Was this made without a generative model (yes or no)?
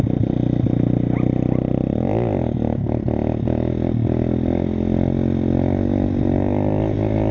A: yes